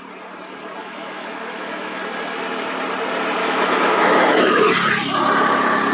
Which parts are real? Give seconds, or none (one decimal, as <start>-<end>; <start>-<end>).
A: 0.0-0.8; 2.0-3.4; 4.7-5.9